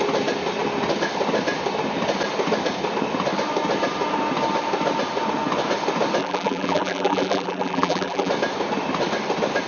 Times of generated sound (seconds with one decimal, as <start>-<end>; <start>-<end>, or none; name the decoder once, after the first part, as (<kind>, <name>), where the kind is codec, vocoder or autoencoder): 6.2-8.3 (vocoder, BigVGAN v2)